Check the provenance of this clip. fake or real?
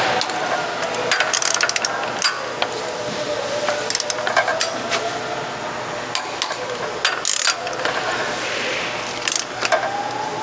real